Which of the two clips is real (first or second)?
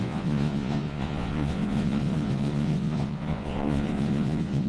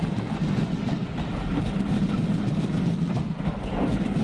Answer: second